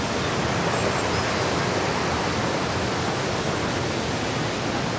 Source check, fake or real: real